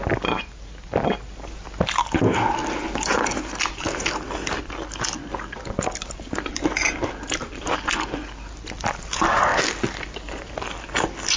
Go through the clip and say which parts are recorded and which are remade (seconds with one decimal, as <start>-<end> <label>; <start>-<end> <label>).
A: 0.0-11.4 recorded